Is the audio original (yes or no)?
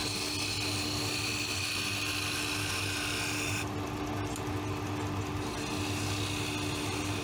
yes